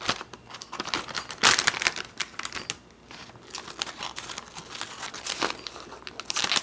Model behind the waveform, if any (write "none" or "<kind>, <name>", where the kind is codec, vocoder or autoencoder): none